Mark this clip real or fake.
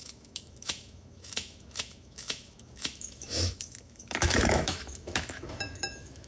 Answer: fake